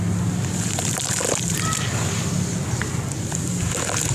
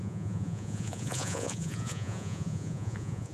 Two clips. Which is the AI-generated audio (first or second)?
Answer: second